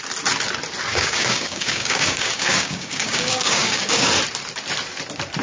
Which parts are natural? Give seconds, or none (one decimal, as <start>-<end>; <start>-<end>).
0.0-0.9; 4.1-5.4